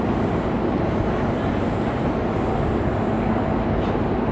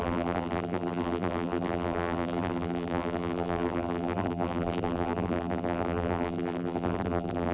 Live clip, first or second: first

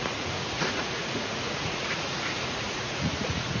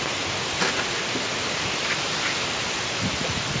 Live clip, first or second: second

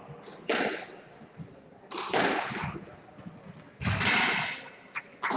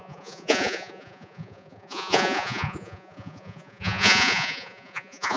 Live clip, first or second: first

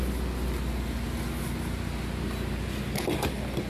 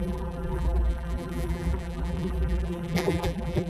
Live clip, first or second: first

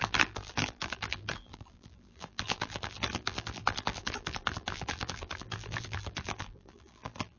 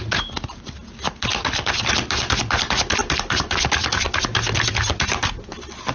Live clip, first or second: second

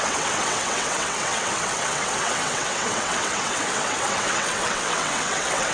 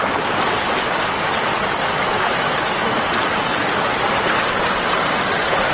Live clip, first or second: second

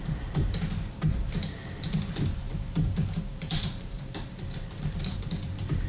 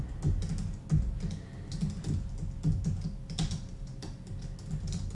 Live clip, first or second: second